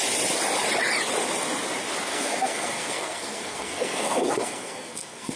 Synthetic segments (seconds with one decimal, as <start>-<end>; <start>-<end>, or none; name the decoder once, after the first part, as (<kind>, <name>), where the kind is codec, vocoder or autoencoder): 2.1-5.4 (codec, SNAC)